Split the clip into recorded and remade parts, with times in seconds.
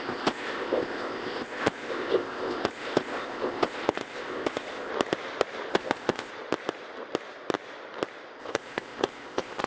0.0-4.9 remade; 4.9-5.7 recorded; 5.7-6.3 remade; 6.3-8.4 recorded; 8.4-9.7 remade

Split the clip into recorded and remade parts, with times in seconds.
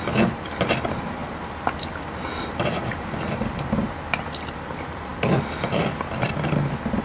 0.0-7.0 recorded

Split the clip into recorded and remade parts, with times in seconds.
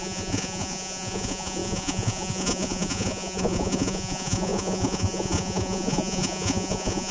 0.0-7.1 remade